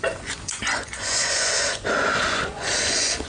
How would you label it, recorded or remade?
remade